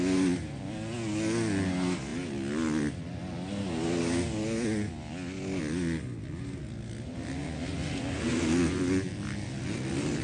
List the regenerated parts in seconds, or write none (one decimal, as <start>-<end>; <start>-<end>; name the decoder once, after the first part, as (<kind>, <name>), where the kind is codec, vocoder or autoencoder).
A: none